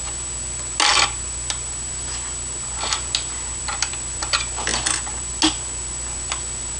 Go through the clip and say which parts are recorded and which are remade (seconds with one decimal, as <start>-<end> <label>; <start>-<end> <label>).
0.0-6.8 recorded